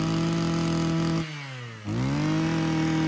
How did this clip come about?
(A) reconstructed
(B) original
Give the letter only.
B